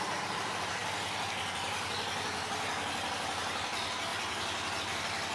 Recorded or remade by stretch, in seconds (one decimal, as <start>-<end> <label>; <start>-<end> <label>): 0.0-5.3 recorded